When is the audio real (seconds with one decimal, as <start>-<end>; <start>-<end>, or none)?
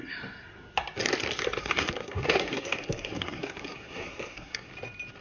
0.0-1.6; 4.7-5.2